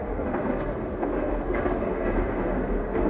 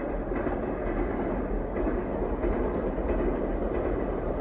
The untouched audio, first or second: second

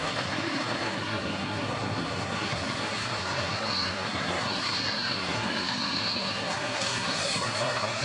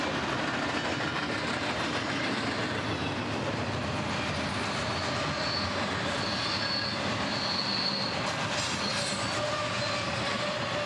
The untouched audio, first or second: second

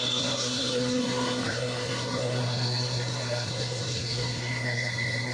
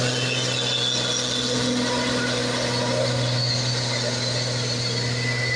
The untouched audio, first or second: second